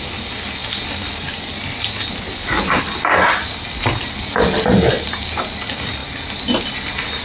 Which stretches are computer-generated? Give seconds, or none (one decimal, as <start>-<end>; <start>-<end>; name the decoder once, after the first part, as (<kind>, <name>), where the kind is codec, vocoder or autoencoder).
none